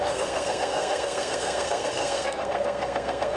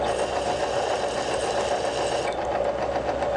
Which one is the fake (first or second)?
first